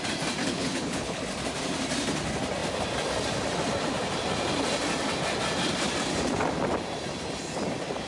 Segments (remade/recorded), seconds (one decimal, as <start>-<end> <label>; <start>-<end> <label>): 0.0-0.4 recorded; 0.4-1.2 remade; 1.2-8.1 recorded